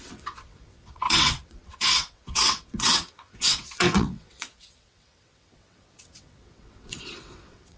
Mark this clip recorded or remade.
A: remade